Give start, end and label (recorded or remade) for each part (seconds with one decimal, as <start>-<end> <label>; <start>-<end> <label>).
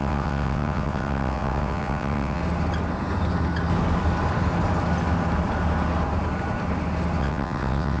0.0-2.4 remade; 2.4-7.2 recorded; 7.2-8.0 remade